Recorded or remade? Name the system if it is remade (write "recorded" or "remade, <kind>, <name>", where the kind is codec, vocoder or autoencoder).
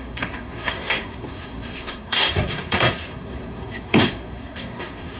remade, codec, SNAC